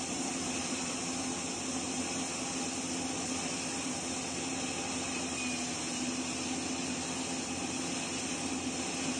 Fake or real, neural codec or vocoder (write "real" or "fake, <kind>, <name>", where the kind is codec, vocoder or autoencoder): real